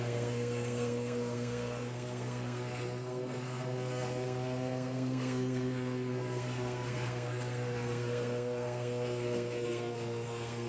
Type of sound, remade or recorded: remade